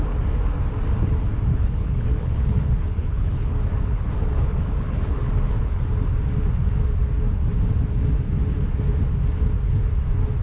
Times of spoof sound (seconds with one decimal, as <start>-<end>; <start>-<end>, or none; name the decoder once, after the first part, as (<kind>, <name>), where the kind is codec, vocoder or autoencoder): 1.5-5.8 (codec, HILCodec)